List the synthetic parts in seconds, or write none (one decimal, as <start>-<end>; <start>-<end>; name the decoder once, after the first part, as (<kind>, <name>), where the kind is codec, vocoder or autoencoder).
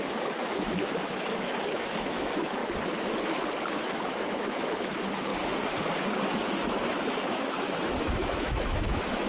0.0-2.6 (autoencoder, DAC-VAE); 3.7-5.3; 6.4-9.3